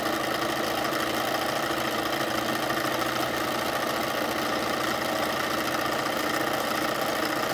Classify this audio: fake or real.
real